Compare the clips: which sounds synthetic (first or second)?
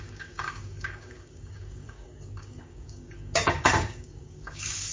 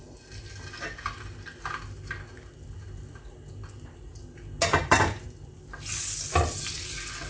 first